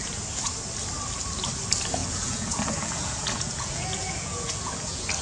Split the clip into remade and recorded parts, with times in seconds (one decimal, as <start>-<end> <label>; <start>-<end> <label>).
0.0-2.0 recorded; 2.0-5.2 remade